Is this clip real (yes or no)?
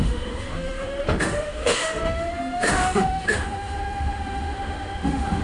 no